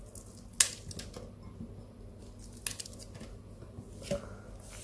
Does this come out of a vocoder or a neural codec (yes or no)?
no